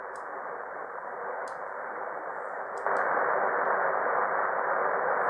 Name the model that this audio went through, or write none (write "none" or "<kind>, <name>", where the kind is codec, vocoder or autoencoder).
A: none